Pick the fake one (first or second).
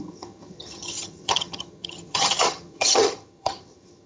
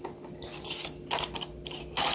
first